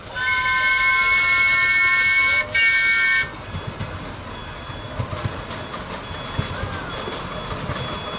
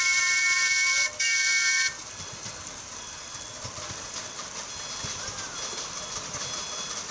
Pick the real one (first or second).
first